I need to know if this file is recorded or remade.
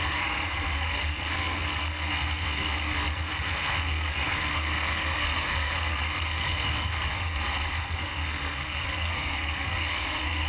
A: remade